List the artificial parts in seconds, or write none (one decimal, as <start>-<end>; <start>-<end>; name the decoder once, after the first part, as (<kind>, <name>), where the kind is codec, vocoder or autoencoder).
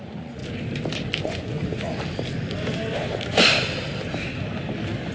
0.0-0.4 (vocoder, Vocos); 1.2-1.6